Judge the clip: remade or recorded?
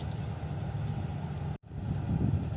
recorded